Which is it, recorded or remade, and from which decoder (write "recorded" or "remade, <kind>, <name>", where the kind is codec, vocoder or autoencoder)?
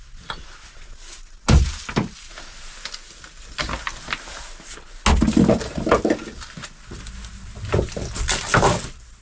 recorded